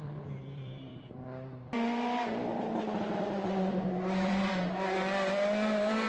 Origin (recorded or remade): remade